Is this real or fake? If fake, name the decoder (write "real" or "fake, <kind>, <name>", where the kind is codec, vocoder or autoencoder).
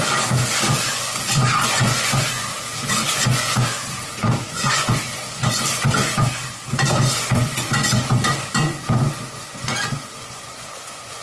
fake, vocoder, Vocos